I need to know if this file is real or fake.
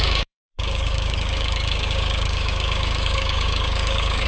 fake